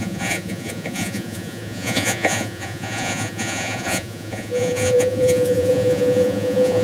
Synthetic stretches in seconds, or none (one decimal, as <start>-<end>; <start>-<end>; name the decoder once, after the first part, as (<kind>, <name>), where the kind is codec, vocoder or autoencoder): 0.0-6.8 (vocoder, Vocos)